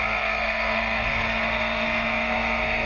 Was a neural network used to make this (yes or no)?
yes